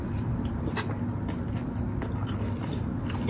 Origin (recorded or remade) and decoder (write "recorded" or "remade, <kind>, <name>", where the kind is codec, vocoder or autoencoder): recorded